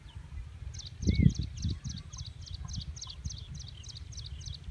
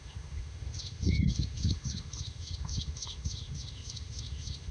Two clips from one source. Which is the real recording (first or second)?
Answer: first